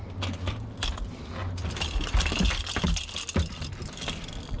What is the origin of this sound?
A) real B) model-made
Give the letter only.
A